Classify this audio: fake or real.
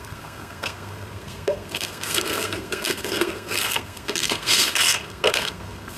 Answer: fake